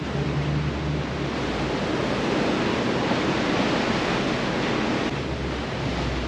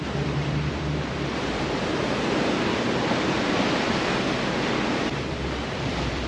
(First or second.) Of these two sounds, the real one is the first